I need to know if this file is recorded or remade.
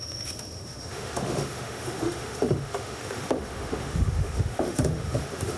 remade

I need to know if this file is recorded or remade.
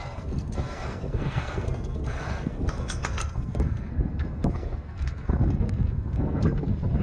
remade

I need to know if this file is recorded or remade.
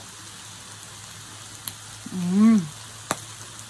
recorded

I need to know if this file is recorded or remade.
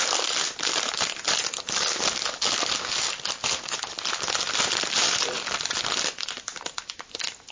recorded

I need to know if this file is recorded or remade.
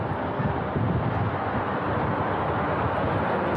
recorded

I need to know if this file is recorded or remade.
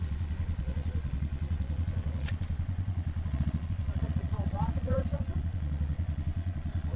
remade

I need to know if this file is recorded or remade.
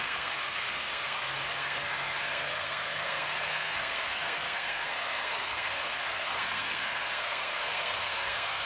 remade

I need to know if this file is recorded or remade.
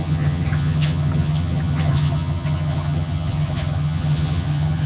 remade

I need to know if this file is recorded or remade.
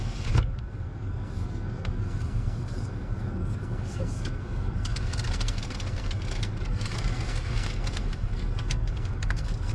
remade